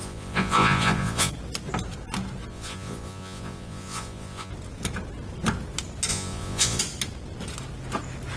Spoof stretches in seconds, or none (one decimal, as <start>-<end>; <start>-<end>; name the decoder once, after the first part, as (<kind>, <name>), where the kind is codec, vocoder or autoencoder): 0.0-1.3 (vocoder, Vocos); 2.5-4.5; 6.1-6.8